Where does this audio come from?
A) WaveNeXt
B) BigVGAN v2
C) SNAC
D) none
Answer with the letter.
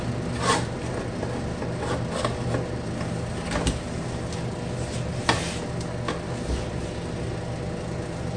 D